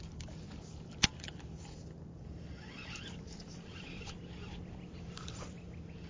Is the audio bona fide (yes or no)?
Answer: no